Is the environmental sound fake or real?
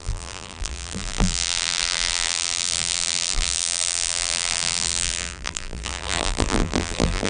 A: fake